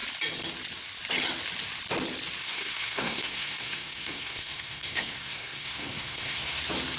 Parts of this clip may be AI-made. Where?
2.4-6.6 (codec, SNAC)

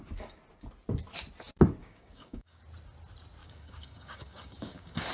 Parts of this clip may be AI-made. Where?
1.8-2.6 (codec, DAC); 3.4-5.1

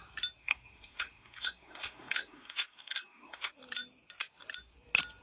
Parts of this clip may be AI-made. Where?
0.4-3.5 (codec, SNAC)

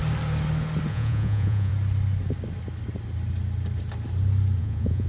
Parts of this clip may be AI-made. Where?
0.9-1.7 (vocoder, Vocos); 4.6-5.1

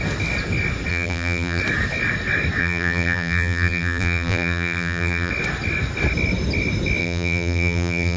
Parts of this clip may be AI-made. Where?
0.9-1.6 (vocoder, BigVGAN v2); 2.6-5.3; 7.0-8.2